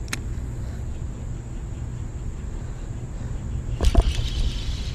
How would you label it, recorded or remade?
recorded